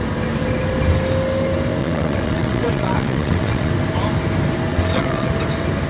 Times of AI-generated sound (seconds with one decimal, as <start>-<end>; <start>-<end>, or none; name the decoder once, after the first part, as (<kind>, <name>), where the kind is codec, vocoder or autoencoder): 1.8-3.7 (vocoder, WaveNeXt); 4.7-5.3